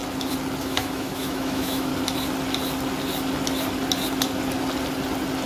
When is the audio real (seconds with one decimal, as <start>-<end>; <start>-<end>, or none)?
0.0-0.6; 1.9-5.5